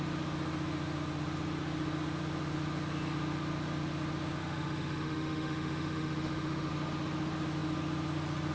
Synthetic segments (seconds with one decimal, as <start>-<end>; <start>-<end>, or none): 4.4-6.7